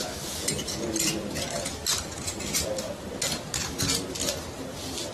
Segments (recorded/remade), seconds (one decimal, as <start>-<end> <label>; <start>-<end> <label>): 0.0-5.1 recorded